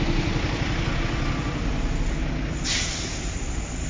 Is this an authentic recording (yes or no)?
yes